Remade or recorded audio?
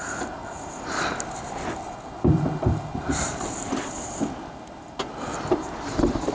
recorded